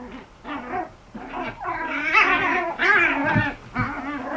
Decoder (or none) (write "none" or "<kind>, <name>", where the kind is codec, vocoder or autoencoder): none